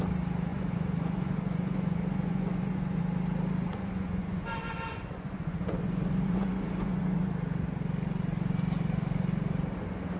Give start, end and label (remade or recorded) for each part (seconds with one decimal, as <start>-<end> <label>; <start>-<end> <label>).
0.0-0.5 recorded; 0.5-3.0 remade; 3.0-3.7 recorded; 3.7-7.3 remade; 7.3-10.2 recorded